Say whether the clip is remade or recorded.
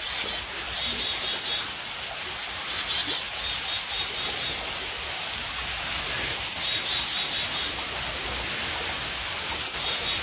recorded